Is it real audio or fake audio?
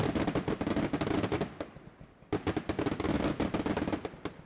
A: real